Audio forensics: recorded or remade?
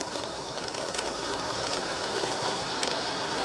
remade